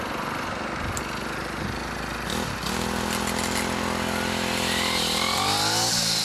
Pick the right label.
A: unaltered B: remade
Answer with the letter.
A